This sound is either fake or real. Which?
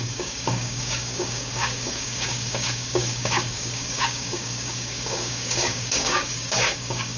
fake